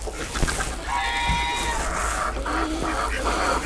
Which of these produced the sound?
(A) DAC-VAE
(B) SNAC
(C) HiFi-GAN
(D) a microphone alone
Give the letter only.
D